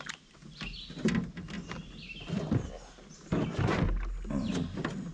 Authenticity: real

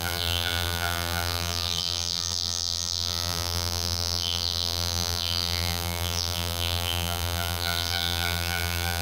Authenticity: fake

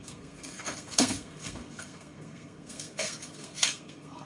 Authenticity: fake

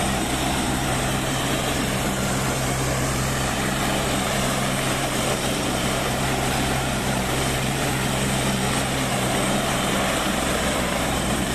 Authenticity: fake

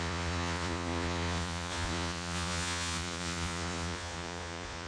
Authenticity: fake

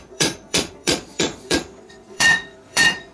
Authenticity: fake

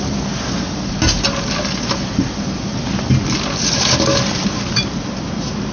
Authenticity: real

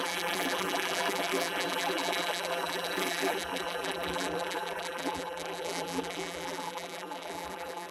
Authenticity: fake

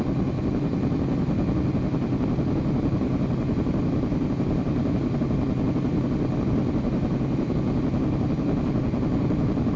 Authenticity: real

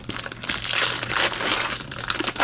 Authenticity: real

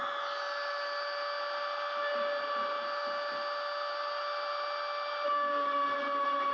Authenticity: real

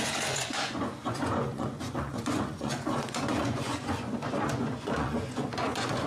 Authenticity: fake